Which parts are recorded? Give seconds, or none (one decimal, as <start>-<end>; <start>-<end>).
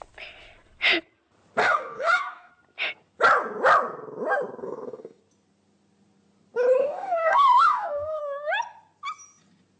0.0-1.6; 2.5-4.6; 5.2-6.8; 8.2-9.8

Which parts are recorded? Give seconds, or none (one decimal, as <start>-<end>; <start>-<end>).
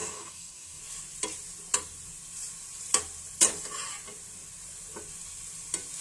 0.8-6.0